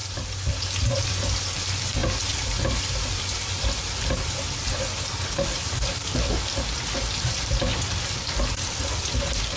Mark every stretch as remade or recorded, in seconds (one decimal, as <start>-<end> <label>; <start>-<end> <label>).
0.0-9.6 remade